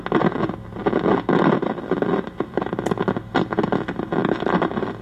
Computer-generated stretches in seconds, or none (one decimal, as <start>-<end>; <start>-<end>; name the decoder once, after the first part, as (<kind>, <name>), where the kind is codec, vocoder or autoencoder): none